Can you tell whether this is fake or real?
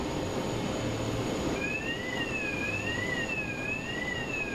real